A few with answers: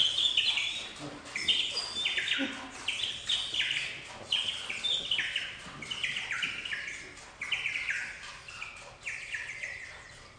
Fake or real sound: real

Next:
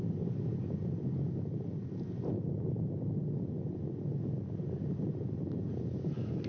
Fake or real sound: real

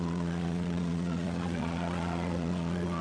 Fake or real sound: fake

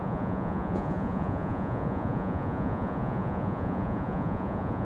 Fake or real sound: fake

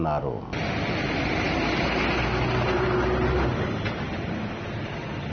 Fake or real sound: real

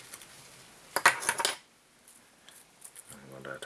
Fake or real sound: real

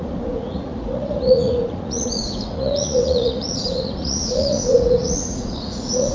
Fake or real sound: fake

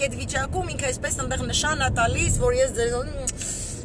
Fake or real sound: real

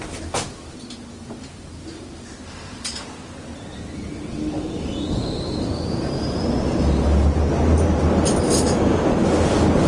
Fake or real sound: real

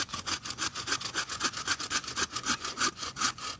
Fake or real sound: fake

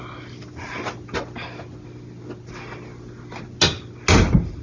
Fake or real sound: real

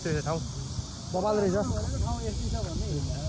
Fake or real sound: real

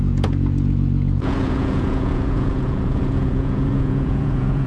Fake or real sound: fake